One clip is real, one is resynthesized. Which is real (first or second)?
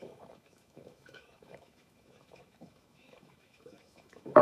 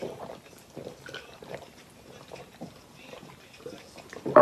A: second